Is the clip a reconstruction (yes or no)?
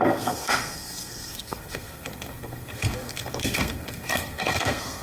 yes